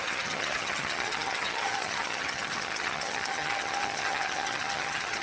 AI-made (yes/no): yes